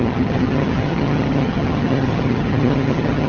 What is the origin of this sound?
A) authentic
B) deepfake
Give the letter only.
B